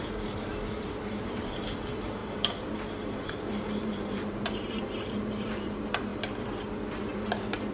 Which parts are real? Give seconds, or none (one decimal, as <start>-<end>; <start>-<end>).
6.1-7.7